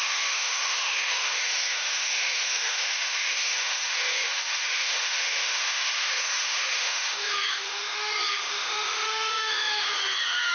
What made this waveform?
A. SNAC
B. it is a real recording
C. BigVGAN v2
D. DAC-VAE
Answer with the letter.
D